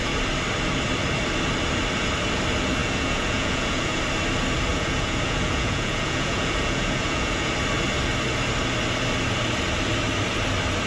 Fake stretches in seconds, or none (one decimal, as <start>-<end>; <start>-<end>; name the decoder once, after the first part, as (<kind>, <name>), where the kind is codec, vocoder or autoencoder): 2.8-4.0 (vocoder, Vocos); 4.7-7.5